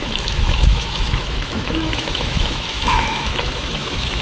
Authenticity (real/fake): fake